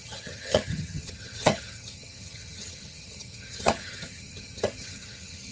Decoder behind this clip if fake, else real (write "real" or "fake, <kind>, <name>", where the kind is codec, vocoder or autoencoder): fake, vocoder, HiFi-GAN